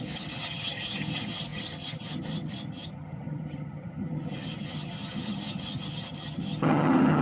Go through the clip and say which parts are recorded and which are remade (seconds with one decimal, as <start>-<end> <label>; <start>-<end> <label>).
0.0-7.2 remade